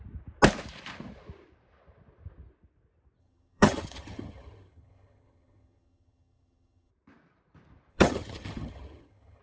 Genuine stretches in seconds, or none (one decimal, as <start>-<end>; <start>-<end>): 0.0-3.2; 6.9-7.9